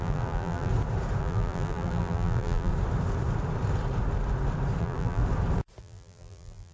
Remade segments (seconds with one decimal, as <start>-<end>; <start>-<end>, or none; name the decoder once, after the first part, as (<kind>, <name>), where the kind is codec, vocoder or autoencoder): 0.0-0.7 (vocoder, BigVGAN v2); 1.2-2.7; 4.8-5.2; 5.8-6.7

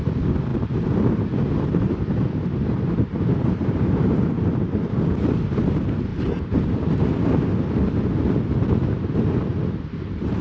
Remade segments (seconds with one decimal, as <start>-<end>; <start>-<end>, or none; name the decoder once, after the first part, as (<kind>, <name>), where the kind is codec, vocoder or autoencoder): 0.5-4.8 (vocoder, BigVGAN v2); 6.1-6.6; 9.5-10.4